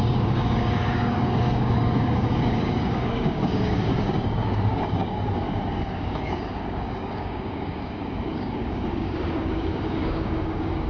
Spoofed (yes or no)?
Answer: yes